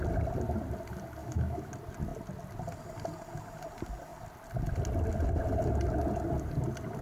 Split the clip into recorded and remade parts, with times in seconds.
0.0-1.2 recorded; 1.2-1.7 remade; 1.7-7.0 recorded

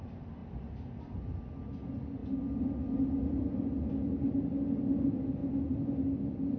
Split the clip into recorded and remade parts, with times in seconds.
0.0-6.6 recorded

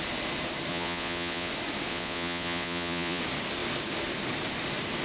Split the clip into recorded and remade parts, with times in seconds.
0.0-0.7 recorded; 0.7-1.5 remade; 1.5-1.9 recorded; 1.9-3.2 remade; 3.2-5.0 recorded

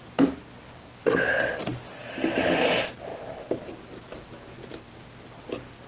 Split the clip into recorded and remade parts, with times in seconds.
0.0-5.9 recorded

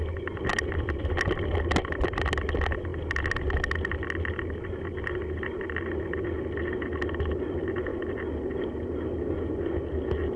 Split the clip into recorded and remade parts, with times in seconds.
0.0-10.4 recorded